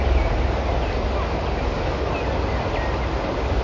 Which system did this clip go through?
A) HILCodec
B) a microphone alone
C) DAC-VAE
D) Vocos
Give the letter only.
B